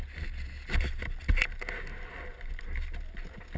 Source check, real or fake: real